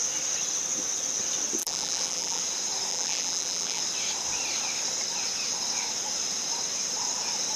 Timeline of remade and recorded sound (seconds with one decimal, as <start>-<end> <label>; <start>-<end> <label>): 0.0-1.6 recorded; 1.6-2.4 remade; 2.4-2.9 recorded; 2.9-3.8 remade; 3.8-7.6 recorded